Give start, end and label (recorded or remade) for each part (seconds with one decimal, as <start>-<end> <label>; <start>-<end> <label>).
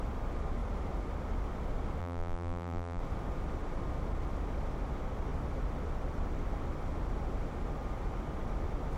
0.0-2.0 recorded; 2.0-3.0 remade; 3.0-9.0 recorded